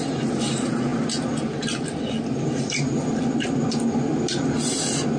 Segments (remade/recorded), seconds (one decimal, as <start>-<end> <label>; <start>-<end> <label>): 0.0-5.2 recorded